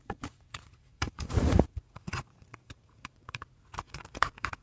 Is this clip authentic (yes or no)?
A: no